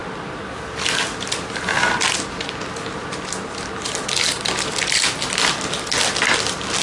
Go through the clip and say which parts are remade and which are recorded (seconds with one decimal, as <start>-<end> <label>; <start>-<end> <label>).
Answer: 0.0-6.8 recorded